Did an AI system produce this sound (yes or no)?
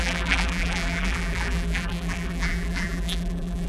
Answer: yes